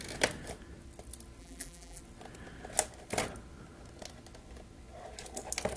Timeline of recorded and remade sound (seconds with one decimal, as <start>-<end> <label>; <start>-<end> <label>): 0.0-1.4 recorded; 1.4-2.0 remade; 2.0-5.8 recorded